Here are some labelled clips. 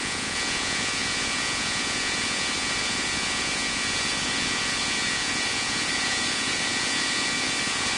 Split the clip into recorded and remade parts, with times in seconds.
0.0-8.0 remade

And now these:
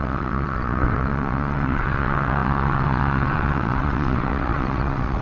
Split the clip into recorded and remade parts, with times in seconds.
0.0-5.2 remade

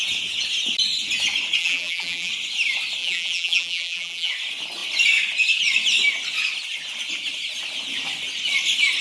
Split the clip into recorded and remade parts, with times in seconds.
0.0-1.6 recorded; 1.6-2.3 remade; 2.3-3.0 recorded; 3.0-4.3 remade; 4.3-9.0 recorded

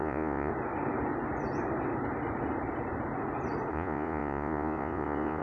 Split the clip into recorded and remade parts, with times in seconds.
0.0-0.5 remade; 0.5-3.7 recorded; 3.7-5.4 remade

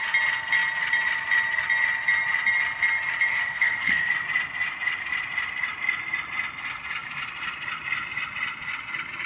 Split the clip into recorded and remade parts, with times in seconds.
0.0-3.3 recorded; 3.3-4.1 remade; 4.1-9.3 recorded

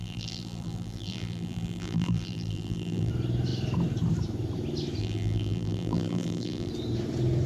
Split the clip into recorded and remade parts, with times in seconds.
0.0-3.1 remade; 3.1-5.0 recorded; 5.0-6.7 remade; 6.7-7.5 recorded

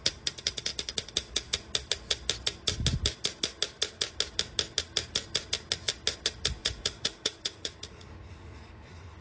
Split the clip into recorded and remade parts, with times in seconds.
0.0-6.6 recorded; 6.6-9.2 remade